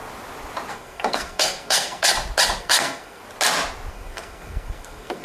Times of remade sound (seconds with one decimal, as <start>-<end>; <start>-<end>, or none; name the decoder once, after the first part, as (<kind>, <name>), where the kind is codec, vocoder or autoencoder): 0.7-2.1 (codec, SNAC); 2.6-3.2; 3.9-5.2